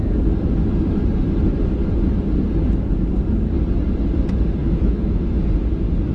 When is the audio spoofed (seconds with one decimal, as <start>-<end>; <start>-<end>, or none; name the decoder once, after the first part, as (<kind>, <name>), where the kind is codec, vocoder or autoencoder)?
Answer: 4.6-5.2 (autoencoder, DAC-VAE)